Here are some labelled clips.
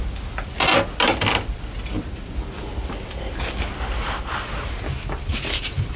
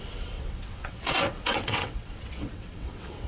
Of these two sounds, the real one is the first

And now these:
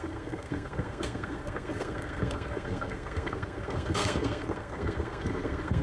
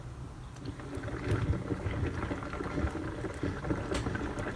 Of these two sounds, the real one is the second